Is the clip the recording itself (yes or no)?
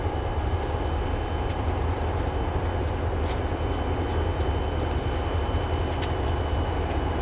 yes